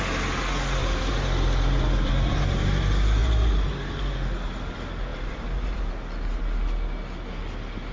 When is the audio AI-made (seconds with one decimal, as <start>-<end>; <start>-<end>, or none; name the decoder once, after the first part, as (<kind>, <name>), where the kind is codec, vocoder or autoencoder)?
0.8-2.8 (vocoder, BigVGAN v2); 3.2-4.1; 5.1-5.9

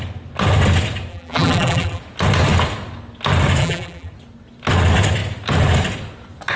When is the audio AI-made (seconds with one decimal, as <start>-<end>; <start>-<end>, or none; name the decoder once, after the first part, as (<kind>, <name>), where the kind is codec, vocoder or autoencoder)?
1.1-2.0 (vocoder, BigVGAN v2); 3.6-4.1

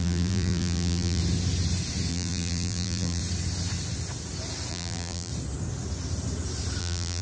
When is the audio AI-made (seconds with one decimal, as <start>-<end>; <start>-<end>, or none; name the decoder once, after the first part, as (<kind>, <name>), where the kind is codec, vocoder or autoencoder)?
0.0-1.2 (vocoder, BigVGAN v2); 2.1-3.2; 4.7-5.3; 6.8-7.2

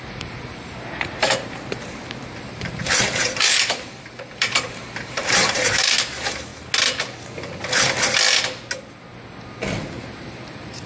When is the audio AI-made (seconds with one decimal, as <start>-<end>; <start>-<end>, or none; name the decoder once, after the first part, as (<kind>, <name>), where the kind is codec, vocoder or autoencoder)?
0.0-6.5 (vocoder, BigVGAN v2); 10.0-10.9